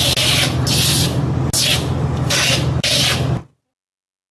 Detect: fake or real real